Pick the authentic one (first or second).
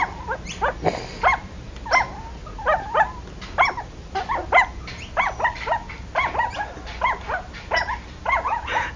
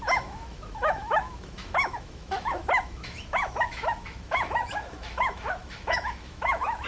first